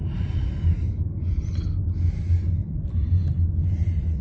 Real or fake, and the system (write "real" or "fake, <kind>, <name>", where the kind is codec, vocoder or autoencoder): real